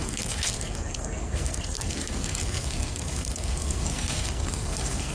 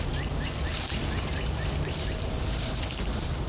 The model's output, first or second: first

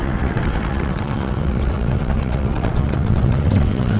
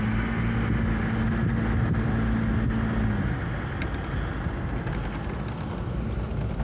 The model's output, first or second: first